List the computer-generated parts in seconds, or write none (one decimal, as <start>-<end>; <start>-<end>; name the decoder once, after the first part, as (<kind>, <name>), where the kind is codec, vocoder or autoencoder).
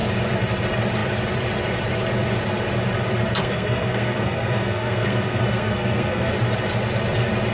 3.4-6.3 (codec, SNAC)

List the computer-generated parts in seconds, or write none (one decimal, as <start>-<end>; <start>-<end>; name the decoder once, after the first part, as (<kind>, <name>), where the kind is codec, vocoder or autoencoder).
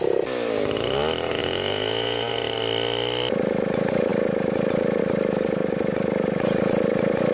1.4-2.3 (vocoder, Vocos)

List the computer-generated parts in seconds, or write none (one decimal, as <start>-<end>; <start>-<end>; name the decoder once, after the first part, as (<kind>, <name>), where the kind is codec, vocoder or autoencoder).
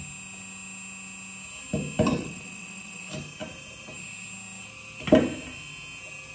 2.1-3.0 (vocoder, WaveNeXt)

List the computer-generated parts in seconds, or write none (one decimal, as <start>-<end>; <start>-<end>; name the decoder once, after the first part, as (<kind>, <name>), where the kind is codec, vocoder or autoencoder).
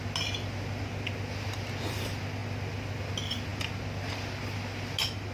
none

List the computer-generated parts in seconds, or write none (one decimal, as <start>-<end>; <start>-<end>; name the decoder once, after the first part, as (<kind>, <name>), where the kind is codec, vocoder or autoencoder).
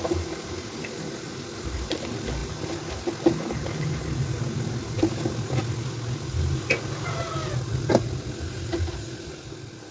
7.4-7.9 (vocoder, BigVGAN v2)